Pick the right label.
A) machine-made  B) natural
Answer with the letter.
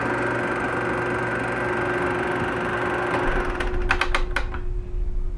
B